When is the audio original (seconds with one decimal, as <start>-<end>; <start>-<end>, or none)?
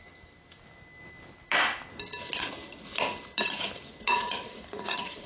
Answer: 0.0-4.1